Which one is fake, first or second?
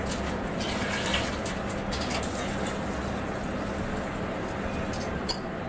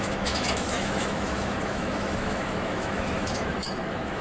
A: second